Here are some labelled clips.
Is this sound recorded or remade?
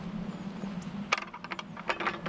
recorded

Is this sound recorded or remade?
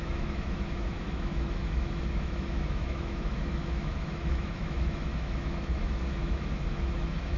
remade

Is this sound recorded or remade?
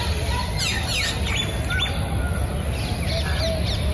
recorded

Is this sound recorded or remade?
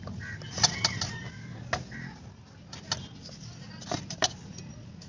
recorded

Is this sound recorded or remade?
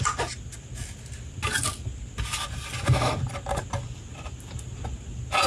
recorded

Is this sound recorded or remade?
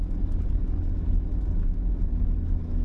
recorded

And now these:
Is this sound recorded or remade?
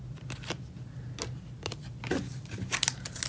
recorded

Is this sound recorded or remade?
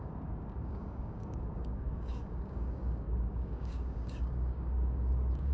remade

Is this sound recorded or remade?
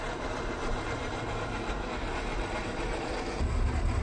remade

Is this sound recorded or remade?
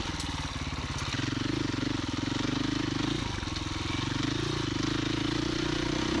recorded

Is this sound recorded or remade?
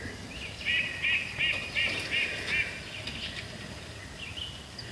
recorded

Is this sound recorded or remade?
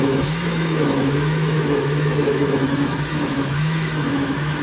remade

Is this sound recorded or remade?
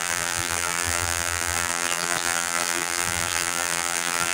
remade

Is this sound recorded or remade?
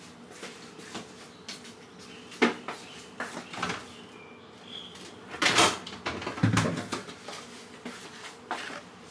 recorded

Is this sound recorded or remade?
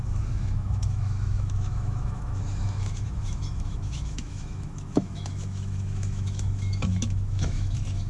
remade